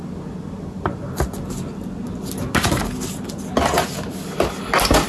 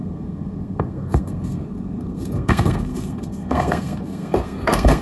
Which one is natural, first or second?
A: first